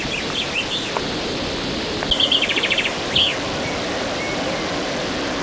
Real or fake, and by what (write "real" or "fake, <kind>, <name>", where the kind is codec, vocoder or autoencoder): real